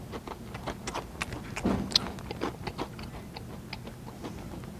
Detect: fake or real real